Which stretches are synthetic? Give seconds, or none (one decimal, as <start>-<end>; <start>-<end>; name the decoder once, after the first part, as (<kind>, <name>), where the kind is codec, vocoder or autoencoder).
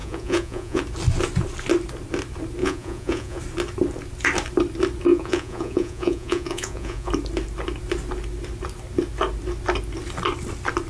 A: 0.0-0.8 (vocoder, Vocos); 2.6-3.4; 5.1-7.1